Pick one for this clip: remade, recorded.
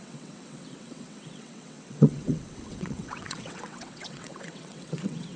remade